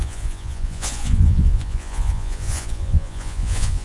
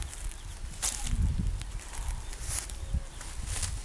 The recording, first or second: second